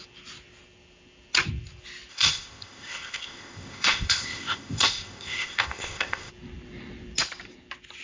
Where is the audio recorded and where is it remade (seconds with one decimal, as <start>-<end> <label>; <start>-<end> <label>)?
0.0-2.1 recorded; 2.1-6.3 remade; 6.3-8.0 recorded